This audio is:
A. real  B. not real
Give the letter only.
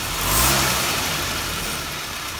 B